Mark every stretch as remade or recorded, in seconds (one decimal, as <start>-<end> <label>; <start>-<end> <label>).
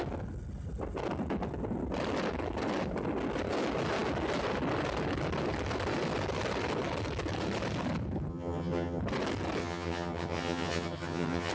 0.0-8.3 recorded; 8.3-9.0 remade; 9.0-9.6 recorded; 9.6-11.5 remade